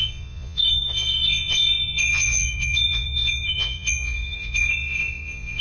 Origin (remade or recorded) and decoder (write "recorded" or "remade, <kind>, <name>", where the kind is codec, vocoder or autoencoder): remade, vocoder, Vocos